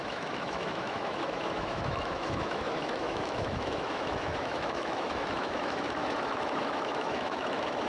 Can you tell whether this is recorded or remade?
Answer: remade